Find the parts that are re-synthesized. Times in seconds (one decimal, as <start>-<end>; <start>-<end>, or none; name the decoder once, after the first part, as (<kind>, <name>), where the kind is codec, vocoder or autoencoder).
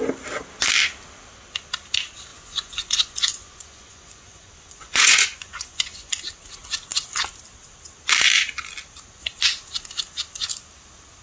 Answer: 2.3-6.1 (vocoder, Vocos)